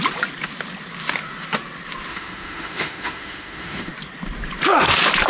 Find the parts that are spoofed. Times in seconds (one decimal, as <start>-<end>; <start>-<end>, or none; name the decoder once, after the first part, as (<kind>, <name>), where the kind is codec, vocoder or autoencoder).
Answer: 2.1-3.9 (autoencoder, DAC-VAE)